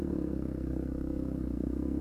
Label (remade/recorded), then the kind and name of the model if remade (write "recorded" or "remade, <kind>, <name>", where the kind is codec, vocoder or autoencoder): remade, codec, SNAC